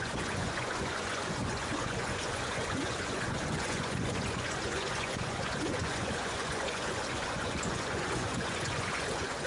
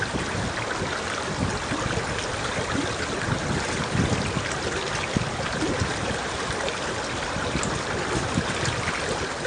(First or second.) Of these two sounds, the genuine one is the second